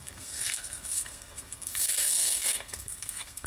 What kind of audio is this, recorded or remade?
remade